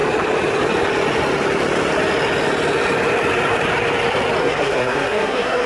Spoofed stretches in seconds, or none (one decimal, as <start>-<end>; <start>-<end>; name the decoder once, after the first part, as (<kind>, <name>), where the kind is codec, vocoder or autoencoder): 4.4-5.7 (codec, SNAC)